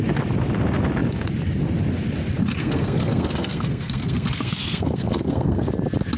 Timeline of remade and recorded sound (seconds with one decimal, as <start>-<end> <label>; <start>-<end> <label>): 0.0-2.6 recorded; 2.6-5.7 remade; 5.7-6.2 recorded